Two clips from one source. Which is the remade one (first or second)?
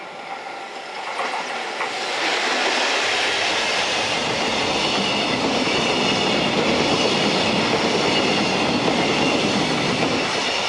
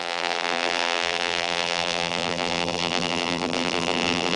second